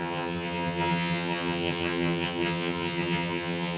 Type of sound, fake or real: fake